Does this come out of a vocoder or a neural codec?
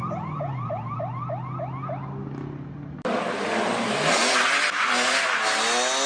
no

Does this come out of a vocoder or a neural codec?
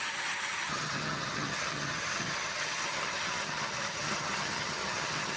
yes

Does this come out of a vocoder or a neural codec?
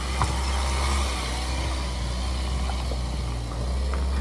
no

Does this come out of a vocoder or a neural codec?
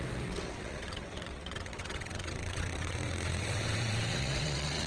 yes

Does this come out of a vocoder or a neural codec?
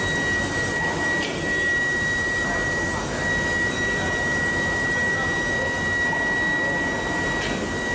no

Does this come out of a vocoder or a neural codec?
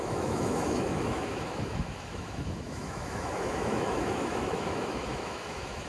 yes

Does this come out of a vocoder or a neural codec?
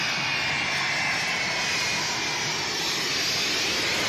no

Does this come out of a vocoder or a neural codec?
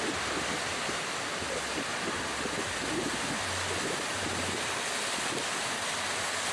no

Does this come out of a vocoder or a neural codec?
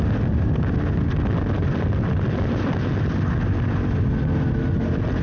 no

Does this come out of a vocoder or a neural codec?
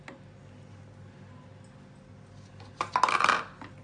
no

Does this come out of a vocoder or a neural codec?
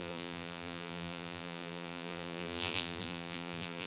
yes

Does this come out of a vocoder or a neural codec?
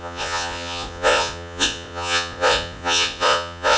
yes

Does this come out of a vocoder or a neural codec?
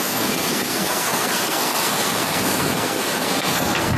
yes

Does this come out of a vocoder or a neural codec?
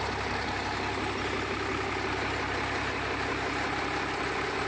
no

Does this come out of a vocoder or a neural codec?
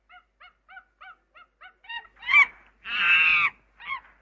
no